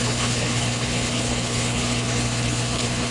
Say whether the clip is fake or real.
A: fake